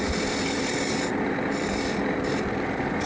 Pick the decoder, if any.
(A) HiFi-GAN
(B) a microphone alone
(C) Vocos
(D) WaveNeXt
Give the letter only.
B